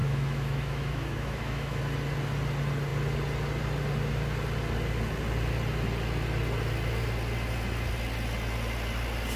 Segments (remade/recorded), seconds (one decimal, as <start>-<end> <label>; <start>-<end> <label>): 0.0-1.8 remade; 1.8-9.4 recorded